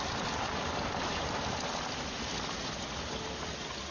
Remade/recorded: recorded